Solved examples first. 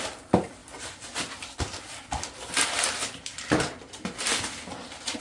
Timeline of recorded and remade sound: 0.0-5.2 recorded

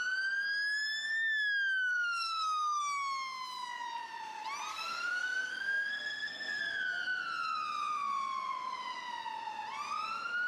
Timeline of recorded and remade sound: 0.0-1.9 recorded; 1.9-2.8 remade; 2.8-4.7 recorded; 4.7-6.6 remade; 6.6-10.5 recorded